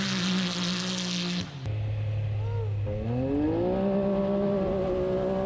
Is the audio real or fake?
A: real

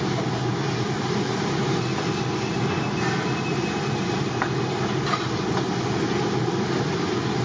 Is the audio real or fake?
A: real